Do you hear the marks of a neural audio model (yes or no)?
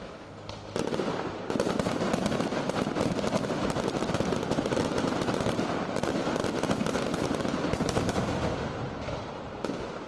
no